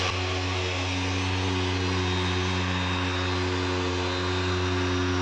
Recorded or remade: recorded